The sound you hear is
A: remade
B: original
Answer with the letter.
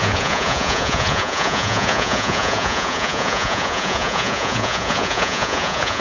A